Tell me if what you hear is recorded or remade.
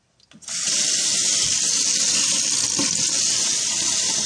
recorded